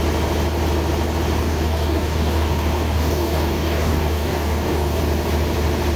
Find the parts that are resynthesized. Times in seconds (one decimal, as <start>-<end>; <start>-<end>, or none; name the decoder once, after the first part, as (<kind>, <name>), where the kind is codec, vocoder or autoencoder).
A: 1.4-5.0 (codec, DAC)